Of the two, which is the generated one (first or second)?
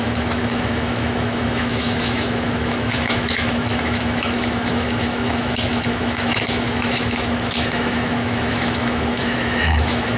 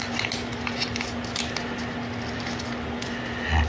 first